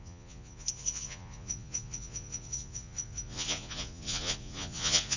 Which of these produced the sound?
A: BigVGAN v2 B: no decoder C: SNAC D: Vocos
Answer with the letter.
D